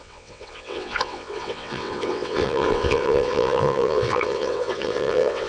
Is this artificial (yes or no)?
yes